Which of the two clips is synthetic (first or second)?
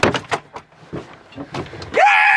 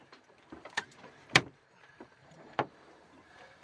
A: second